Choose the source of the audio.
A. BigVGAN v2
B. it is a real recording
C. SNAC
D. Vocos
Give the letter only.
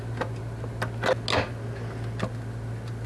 B